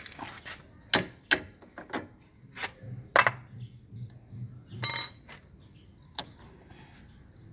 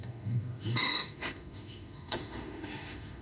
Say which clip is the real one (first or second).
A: first